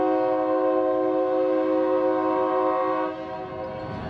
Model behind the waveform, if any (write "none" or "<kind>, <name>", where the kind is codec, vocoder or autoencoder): none